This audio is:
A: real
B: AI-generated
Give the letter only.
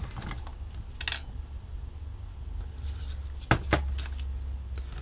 A